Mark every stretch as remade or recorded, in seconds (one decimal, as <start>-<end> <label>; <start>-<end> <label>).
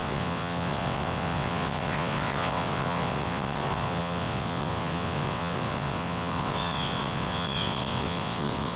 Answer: 0.0-8.8 remade